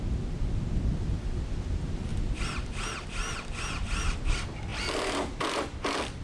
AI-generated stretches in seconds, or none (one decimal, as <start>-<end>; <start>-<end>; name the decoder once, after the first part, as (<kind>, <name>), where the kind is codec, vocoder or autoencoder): none